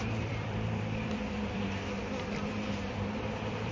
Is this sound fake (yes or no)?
yes